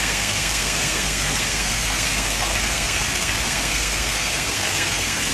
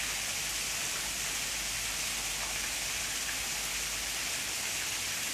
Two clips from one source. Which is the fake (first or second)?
first